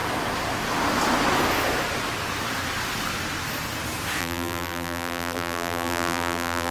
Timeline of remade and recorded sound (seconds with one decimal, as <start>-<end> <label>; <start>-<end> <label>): 0.0-4.2 recorded; 4.2-6.7 remade